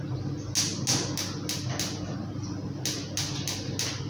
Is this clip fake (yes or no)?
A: no